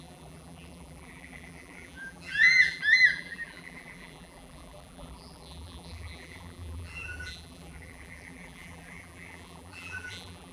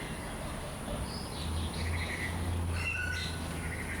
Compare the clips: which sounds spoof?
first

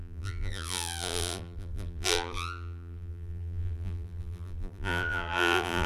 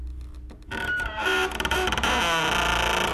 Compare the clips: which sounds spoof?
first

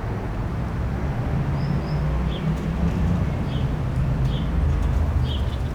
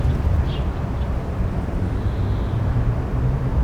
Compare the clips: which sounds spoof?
second